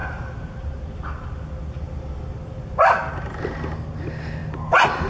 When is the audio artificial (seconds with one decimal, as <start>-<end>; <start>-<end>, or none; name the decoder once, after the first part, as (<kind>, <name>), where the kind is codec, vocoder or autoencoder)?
none